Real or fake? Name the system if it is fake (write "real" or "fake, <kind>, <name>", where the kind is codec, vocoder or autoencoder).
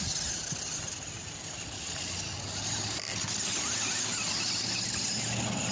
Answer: real